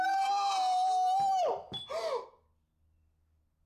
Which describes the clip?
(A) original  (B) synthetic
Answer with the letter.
A